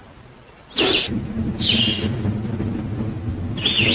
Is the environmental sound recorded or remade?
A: recorded